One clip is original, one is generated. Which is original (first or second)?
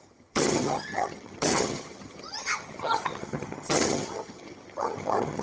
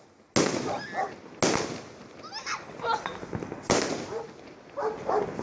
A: second